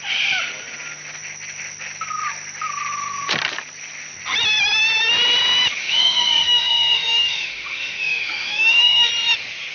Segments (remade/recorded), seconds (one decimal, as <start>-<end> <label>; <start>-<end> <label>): 0.0-5.8 recorded; 5.8-9.1 remade; 9.1-9.7 recorded